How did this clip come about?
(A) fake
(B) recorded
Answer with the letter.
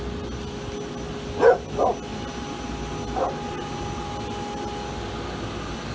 B